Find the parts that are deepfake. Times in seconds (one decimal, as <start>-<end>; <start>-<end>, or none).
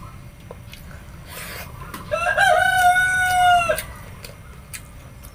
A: none